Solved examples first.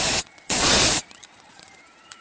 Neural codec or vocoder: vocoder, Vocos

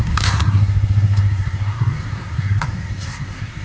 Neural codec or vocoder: codec, SNAC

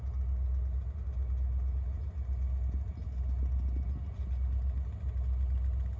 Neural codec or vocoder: none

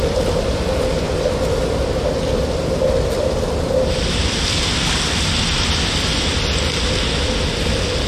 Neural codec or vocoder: none